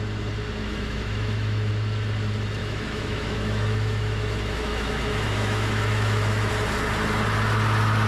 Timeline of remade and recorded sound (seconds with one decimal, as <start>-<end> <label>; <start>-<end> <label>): 0.0-0.6 recorded; 0.6-1.7 remade; 1.7-2.6 recorded; 2.6-6.5 remade; 6.5-8.1 recorded